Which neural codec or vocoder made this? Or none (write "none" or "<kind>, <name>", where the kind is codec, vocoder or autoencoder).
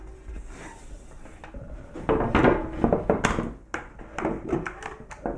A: none